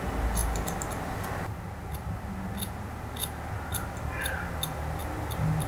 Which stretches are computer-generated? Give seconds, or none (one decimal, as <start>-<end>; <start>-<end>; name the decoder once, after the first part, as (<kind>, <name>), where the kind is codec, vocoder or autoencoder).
none